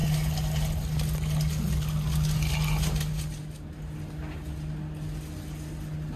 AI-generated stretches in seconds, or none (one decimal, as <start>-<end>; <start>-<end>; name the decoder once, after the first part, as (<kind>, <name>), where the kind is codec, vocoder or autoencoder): none